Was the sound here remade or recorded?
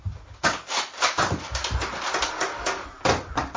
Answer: recorded